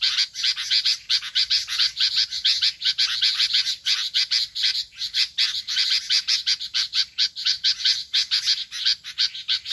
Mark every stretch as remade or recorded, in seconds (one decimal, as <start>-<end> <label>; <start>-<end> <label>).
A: 0.0-9.7 recorded